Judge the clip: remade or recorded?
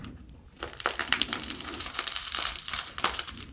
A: remade